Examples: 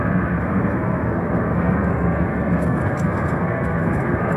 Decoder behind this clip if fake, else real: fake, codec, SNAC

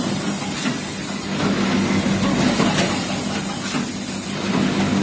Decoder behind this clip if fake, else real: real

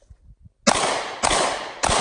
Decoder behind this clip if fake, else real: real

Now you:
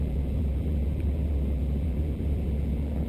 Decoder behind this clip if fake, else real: fake, vocoder, BigVGAN v2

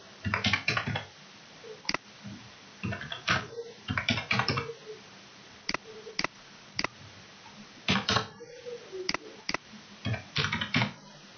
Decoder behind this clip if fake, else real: fake, vocoder, BigVGAN v2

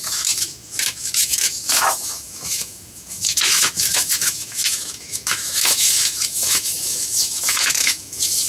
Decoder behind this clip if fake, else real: fake, autoencoder, DAC-VAE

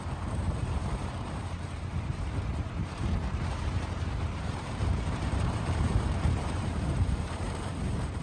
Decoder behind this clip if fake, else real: fake, vocoder, BigVGAN v2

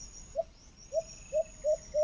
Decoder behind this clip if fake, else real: real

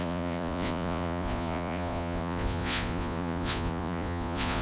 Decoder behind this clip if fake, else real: fake, vocoder, Vocos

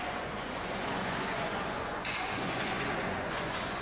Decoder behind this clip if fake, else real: fake, vocoder, Vocos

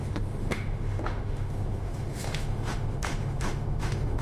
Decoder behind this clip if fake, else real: fake, autoencoder, DAC-VAE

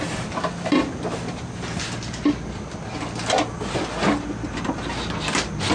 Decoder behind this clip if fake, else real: real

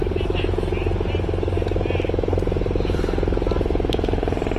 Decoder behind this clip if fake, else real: real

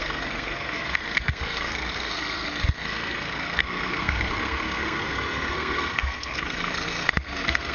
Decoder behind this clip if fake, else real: fake, codec, SNAC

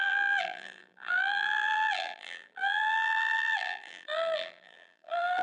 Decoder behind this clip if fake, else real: fake, vocoder, BigVGAN v2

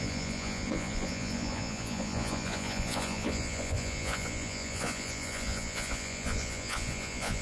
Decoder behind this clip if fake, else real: fake, vocoder, Vocos